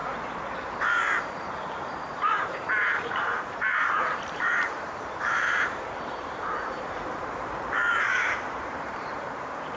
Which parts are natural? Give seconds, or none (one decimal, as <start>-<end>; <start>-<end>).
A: none